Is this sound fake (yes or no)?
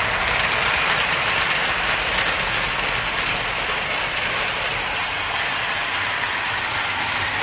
yes